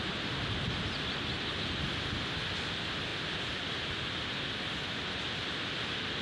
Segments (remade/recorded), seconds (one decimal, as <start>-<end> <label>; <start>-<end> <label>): 0.0-6.2 recorded